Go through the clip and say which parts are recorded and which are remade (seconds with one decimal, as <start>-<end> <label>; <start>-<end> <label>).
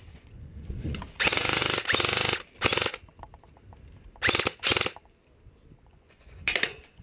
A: 0.0-1.6 remade; 1.6-5.8 recorded; 5.8-7.0 remade